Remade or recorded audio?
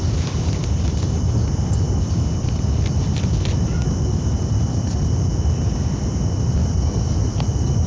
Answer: recorded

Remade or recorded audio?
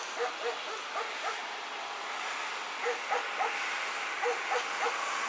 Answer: recorded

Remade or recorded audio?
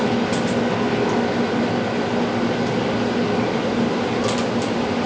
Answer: recorded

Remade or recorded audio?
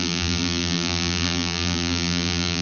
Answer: remade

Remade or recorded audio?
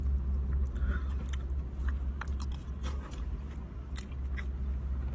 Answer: recorded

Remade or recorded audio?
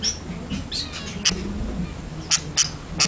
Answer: recorded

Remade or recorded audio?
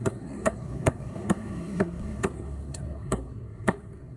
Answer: remade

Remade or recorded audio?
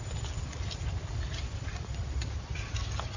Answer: recorded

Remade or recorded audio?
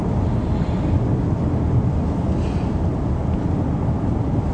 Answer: recorded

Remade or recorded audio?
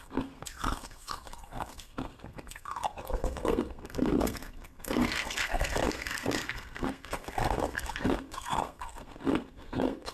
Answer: remade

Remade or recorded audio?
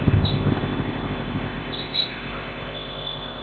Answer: remade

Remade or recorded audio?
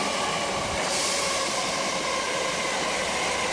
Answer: recorded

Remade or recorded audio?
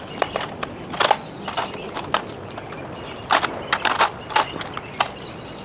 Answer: recorded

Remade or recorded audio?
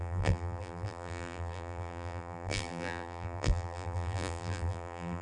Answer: remade